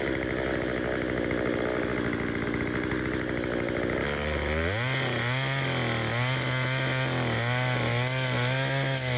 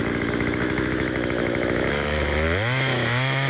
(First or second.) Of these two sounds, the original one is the first